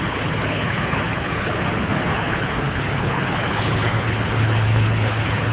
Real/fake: fake